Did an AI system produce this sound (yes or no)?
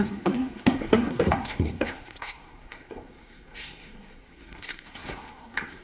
yes